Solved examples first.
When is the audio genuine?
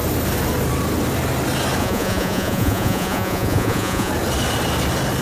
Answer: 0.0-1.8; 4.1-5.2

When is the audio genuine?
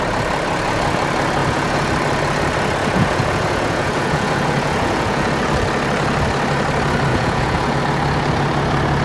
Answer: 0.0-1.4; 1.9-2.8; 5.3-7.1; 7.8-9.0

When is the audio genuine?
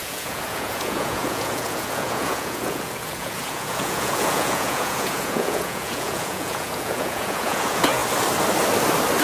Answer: 8.0-9.2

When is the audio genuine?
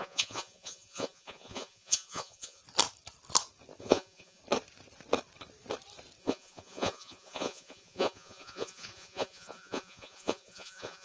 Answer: 2.6-3.8; 4.4-6.2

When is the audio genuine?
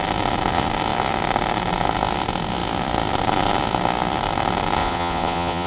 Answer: 0.0-4.8